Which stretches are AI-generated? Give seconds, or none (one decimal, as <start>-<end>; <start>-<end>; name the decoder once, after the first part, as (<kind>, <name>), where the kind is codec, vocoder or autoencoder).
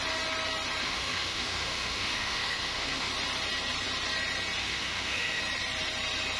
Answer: 0.8-3.1 (autoencoder, DAC-VAE); 4.6-5.4